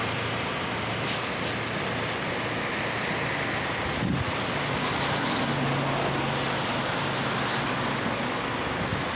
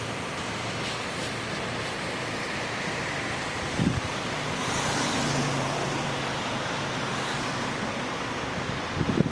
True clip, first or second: first